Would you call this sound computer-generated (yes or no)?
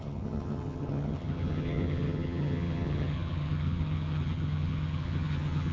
yes